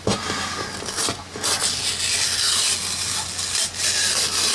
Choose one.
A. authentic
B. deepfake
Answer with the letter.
A